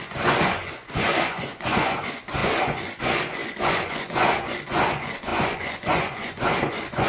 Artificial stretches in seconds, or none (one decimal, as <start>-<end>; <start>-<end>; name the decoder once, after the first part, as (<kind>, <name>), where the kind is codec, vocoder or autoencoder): 0.0-7.1 (vocoder, Vocos)